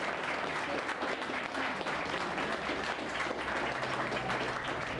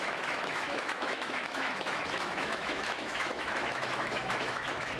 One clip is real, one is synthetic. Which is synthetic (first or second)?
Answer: second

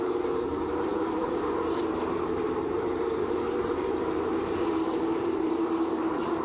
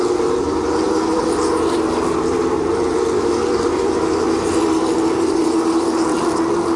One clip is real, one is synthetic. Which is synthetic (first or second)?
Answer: first